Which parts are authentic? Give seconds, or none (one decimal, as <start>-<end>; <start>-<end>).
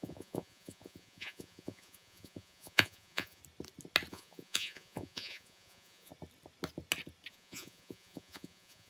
3.4-4.1; 6.1-7.3